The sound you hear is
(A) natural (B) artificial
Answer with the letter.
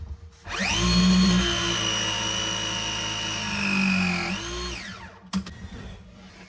A